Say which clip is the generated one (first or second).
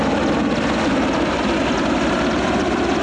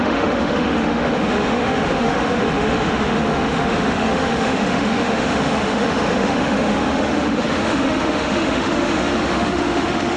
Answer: second